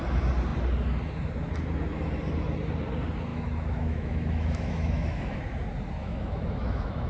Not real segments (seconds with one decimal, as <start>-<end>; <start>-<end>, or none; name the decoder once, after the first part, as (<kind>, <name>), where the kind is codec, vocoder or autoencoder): 3.3-5.4 (autoencoder, DAC-VAE); 6.0-7.1